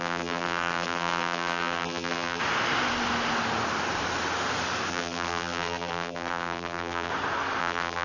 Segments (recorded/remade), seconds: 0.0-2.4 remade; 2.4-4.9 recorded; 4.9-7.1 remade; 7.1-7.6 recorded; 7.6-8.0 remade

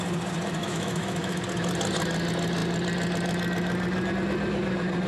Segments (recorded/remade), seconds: 0.0-0.6 recorded; 0.6-1.4 remade; 1.4-5.1 recorded

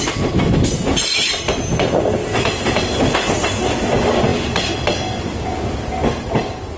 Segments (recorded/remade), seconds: 0.0-6.8 recorded